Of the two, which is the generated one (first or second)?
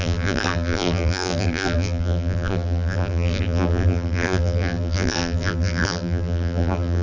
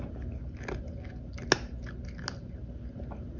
first